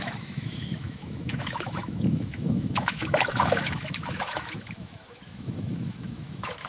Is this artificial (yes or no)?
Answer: yes